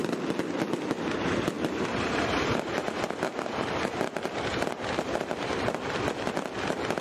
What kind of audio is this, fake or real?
real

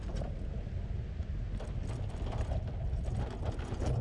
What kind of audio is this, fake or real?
real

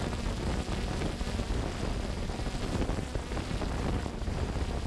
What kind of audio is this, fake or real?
real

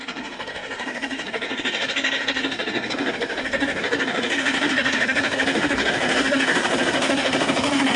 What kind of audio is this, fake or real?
fake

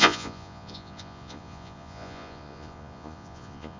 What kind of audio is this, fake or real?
fake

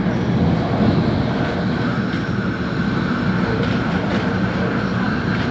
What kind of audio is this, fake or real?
real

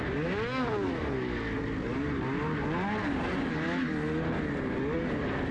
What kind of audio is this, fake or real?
real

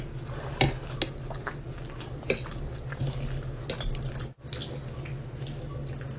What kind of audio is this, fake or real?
real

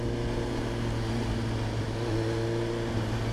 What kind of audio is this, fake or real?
real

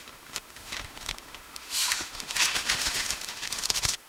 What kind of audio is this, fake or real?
fake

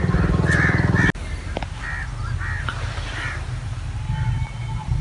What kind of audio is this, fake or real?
real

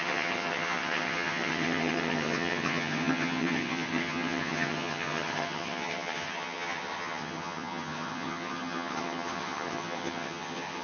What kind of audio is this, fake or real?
fake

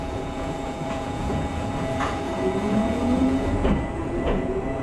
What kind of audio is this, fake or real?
fake